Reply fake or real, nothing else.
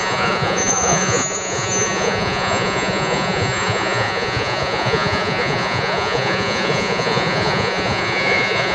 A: fake